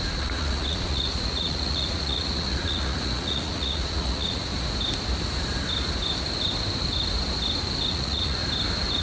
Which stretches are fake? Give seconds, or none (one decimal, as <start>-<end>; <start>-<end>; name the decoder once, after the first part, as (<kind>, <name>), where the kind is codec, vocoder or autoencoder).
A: 0.0-4.5 (vocoder, Vocos); 7.9-8.4

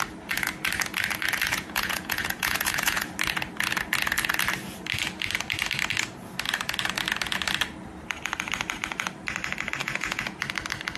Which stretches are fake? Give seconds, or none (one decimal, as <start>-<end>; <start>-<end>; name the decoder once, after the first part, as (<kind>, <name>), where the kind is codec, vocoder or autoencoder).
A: 1.5-3.1 (vocoder, Vocos); 9.8-10.4